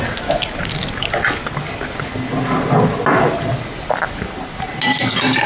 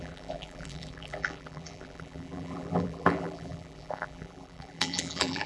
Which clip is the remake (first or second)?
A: second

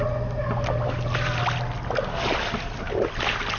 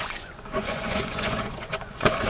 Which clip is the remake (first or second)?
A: second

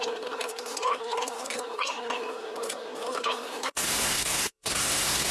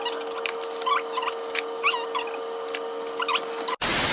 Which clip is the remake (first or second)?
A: first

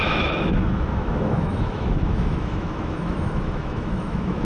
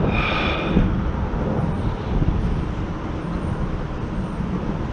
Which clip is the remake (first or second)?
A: first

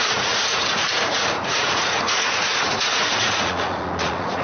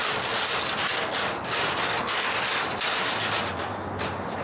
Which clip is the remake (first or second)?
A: first